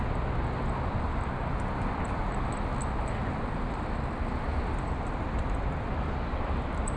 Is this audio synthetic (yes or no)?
no